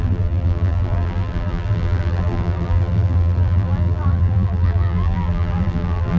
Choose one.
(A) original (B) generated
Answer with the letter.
B